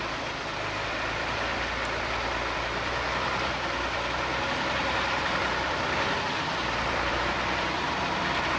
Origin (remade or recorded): remade